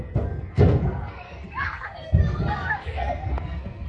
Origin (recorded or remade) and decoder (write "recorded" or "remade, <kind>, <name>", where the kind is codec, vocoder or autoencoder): remade, codec, SNAC